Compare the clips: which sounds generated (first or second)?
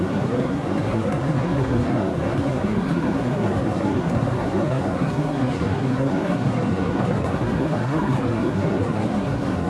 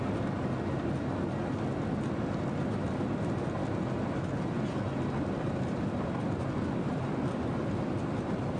first